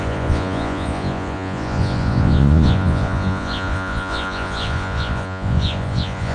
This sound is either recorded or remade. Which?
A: remade